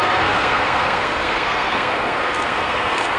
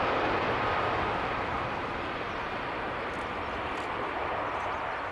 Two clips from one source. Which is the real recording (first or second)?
second